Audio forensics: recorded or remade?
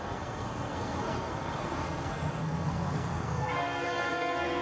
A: remade